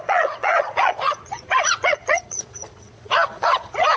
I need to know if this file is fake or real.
fake